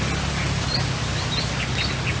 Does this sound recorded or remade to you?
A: recorded